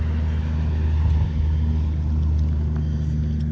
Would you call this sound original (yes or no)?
yes